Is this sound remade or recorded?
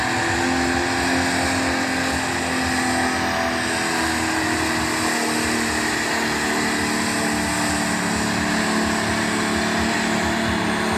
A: recorded